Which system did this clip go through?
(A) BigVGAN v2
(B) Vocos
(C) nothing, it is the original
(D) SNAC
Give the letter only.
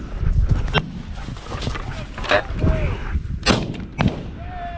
C